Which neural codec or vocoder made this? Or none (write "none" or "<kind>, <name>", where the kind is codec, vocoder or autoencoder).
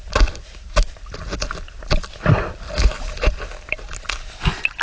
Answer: none